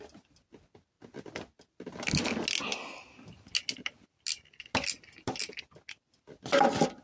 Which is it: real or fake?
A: real